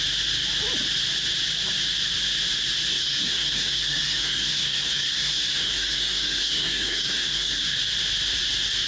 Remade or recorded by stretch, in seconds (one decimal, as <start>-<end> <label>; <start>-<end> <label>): 0.0-2.9 recorded; 2.9-7.8 remade; 7.8-8.9 recorded

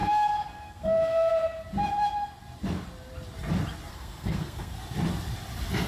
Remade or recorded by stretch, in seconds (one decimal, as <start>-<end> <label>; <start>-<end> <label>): 0.0-1.3 remade; 1.3-3.9 recorded; 3.9-4.8 remade; 4.8-5.9 recorded

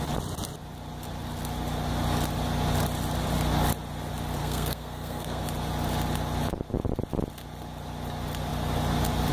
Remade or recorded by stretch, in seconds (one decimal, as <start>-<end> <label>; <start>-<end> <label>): 0.0-4.4 recorded; 4.4-5.4 remade; 5.4-9.3 recorded

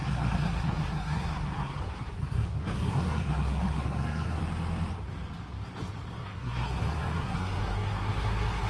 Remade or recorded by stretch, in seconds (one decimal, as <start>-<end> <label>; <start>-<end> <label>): 0.0-4.4 remade; 4.4-6.1 recorded; 6.1-8.7 remade

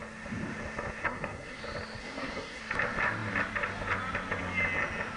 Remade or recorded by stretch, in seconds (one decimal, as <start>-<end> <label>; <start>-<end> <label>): 0.0-1.0 recorded; 1.0-1.6 remade; 1.6-2.0 recorded; 2.0-2.6 remade; 2.6-5.2 recorded

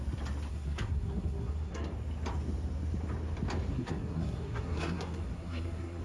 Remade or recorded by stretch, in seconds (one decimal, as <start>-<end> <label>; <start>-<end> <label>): 0.0-0.5 recorded; 0.5-1.9 remade; 1.9-3.7 recorded; 3.7-6.0 remade